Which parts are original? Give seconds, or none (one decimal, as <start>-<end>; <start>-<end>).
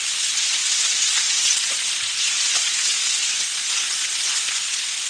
none